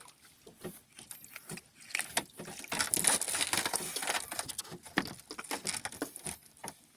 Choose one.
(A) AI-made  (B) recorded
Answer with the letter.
B